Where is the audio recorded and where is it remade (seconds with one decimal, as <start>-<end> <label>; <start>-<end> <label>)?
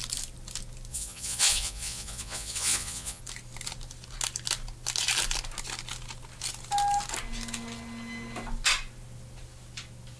0.0-0.9 recorded; 0.9-3.2 remade; 3.2-10.2 recorded